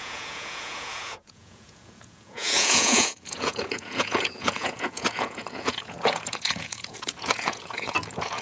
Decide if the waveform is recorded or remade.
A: remade